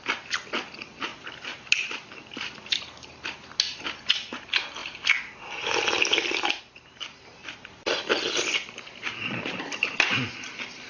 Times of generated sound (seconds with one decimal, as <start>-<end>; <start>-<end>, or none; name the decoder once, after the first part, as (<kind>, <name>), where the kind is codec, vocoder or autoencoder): 0.0-10.9 (vocoder, BigVGAN v2)